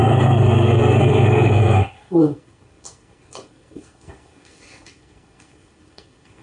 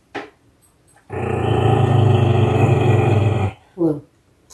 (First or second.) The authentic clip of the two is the second